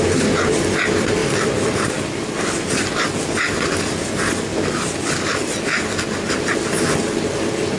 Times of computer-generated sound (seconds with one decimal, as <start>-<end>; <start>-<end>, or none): none

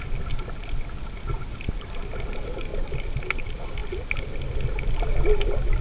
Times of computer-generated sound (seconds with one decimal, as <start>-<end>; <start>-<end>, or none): none

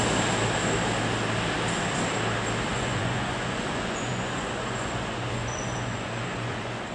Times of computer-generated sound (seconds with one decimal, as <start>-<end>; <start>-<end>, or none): 2.7-6.9

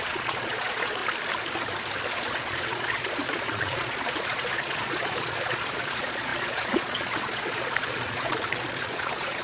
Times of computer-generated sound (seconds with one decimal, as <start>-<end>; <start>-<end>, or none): 0.0-1.0; 2.1-9.4

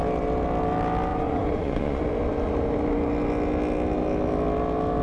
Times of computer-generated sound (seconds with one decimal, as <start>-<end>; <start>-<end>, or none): 1.1-2.0

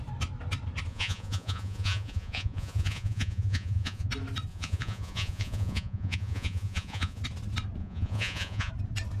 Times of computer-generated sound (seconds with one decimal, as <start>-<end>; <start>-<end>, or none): 0.9-4.1; 4.5-7.2; 7.8-8.7

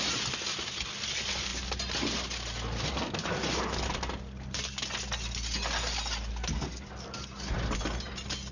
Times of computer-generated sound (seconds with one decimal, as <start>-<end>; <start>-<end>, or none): none